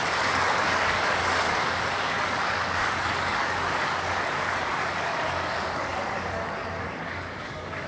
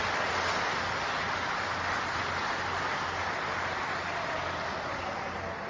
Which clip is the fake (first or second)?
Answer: first